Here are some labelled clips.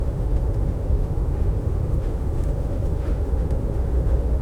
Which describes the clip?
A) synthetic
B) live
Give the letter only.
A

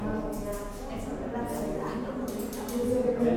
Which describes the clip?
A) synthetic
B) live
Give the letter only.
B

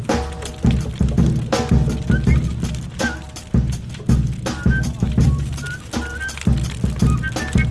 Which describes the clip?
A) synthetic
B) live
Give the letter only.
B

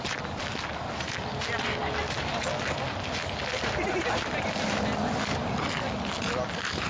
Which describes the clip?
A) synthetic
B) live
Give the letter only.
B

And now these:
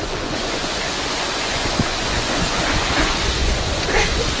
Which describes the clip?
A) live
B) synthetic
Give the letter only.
B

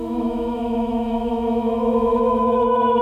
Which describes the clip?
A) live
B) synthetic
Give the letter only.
B